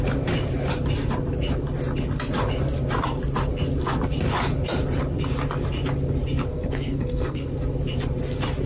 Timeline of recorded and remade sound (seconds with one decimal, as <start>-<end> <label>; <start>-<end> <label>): 0.0-6.5 recorded; 6.5-7.5 remade; 7.5-8.7 recorded